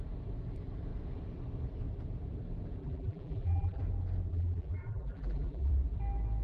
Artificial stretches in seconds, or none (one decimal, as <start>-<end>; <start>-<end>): 2.8-3.8; 4.3-5.7